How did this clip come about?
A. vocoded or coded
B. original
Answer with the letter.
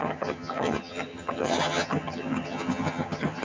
A